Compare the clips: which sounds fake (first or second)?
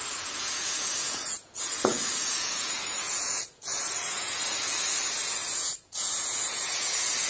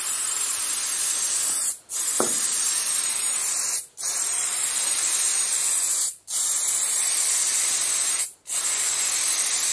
first